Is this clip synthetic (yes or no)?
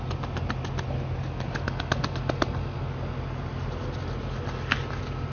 no